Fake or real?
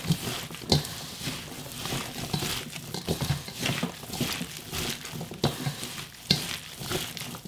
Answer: real